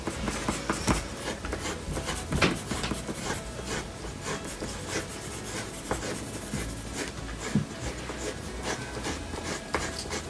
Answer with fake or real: real